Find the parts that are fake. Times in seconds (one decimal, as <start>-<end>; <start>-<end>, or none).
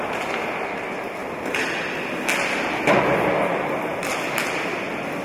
none